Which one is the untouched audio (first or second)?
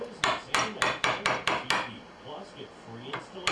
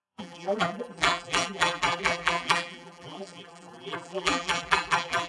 first